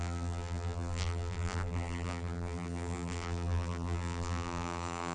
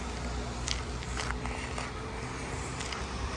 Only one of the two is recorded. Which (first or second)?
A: second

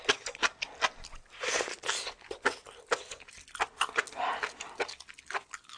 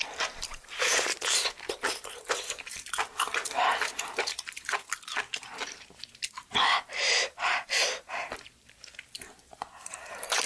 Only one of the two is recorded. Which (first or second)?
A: first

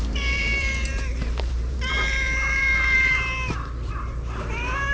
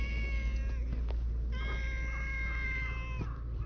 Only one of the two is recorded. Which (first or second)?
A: second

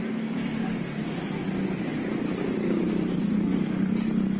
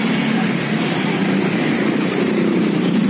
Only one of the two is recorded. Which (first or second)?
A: first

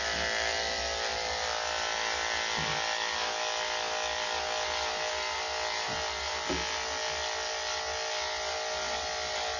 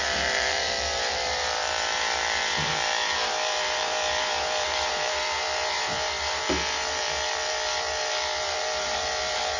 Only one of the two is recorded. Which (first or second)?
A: first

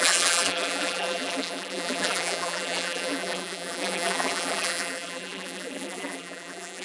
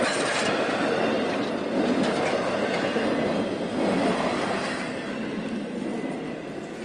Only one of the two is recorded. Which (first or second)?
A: second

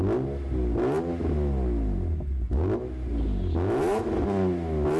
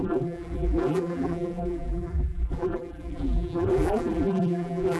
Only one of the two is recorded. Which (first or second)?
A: first